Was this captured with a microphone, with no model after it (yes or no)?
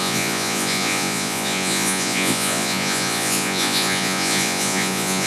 no